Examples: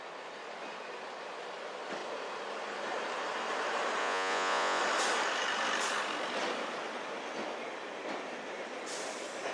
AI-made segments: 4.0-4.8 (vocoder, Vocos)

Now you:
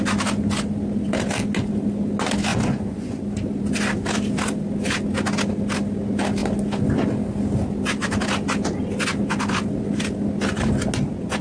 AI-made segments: 2.5-3.2 (vocoder, Vocos)